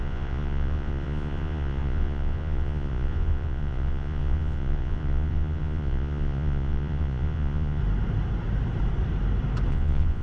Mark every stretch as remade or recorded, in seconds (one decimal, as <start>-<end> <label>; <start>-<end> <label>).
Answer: 0.0-7.8 remade; 7.8-9.7 recorded; 9.7-10.2 remade